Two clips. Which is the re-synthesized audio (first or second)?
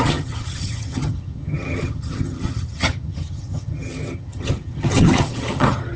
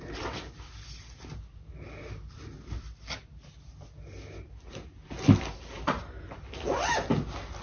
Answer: first